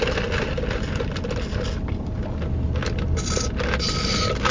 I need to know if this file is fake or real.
real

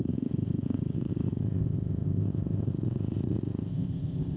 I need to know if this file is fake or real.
fake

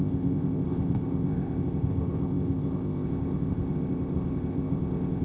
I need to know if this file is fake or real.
fake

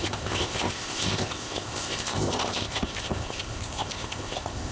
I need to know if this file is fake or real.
fake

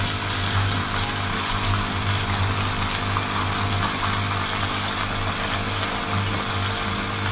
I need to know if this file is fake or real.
real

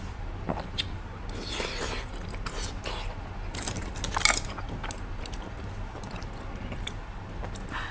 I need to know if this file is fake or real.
real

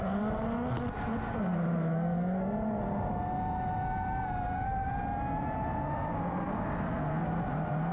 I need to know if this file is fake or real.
real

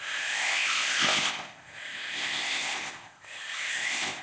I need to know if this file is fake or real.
fake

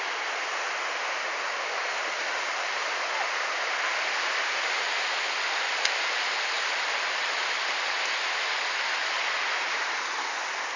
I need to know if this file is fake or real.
real